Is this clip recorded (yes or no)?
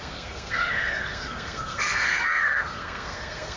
no